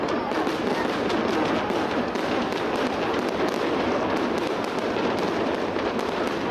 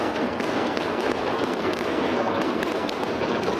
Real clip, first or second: first